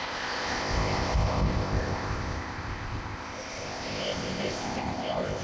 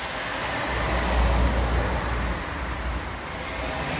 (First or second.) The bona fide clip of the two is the second